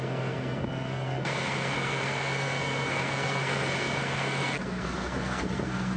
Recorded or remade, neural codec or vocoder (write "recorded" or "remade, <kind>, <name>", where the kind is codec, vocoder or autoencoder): remade, codec, SNAC